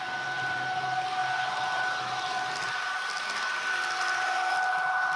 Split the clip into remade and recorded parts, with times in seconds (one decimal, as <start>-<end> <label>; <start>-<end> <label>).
0.0-5.2 recorded